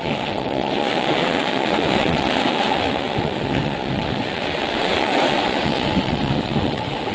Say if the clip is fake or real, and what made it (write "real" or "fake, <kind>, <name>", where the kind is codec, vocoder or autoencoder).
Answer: fake, vocoder, WaveNeXt